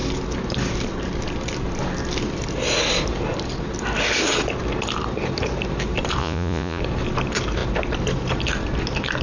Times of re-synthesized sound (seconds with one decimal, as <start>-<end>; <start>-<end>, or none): 6.2-6.8

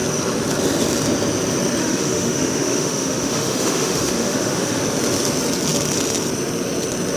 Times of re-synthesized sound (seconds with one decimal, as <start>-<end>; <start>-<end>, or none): 1.8-4.8

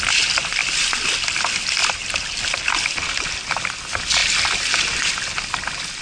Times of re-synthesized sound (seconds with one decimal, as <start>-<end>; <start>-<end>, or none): 1.8-2.7

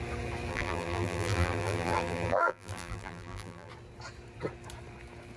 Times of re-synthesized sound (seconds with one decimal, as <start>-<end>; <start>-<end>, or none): 0.5-3.7

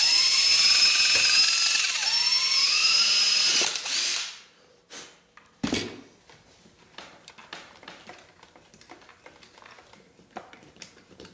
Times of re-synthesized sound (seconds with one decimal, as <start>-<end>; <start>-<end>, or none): 0.0-0.5; 3.8-4.8; 6.2-11.3

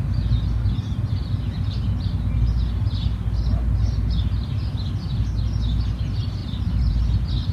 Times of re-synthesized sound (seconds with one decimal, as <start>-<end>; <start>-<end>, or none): 6.4-7.5

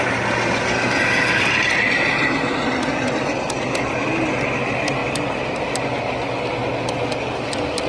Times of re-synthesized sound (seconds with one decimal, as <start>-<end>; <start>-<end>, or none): none